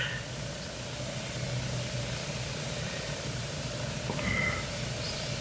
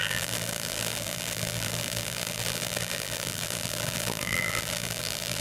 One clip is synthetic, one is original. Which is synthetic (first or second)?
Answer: second